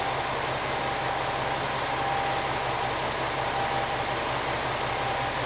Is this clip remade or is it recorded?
recorded